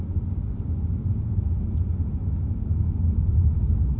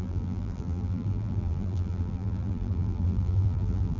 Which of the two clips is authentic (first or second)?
first